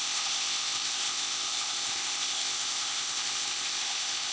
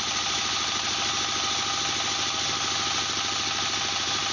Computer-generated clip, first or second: first